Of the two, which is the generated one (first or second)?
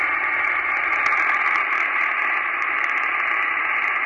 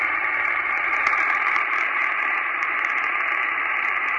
second